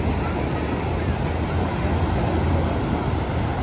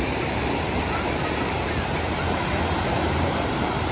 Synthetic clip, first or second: second